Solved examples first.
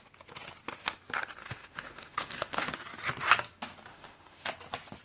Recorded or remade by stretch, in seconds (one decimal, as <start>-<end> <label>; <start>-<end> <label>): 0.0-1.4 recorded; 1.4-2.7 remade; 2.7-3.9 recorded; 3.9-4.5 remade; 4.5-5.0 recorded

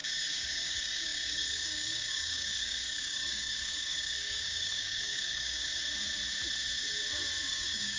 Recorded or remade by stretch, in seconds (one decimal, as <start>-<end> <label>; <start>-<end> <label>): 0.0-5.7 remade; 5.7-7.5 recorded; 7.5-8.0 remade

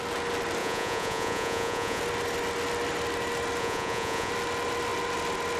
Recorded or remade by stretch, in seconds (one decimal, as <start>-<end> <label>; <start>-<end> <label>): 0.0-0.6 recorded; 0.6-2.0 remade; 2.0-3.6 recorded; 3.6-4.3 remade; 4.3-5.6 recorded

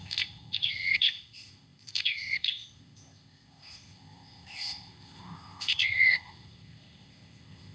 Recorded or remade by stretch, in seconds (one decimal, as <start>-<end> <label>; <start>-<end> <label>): 0.0-7.7 remade